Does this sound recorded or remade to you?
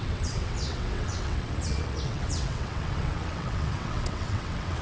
remade